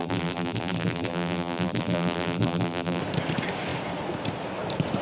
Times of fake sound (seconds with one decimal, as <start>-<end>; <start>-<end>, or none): 0.0-3.0